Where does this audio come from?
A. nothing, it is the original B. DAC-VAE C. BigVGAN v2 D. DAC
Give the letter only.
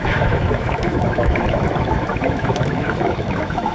B